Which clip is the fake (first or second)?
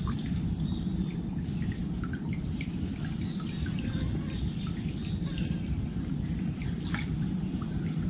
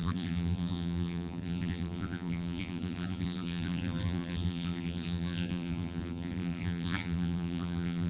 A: second